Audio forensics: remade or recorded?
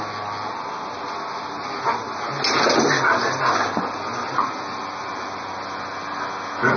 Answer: recorded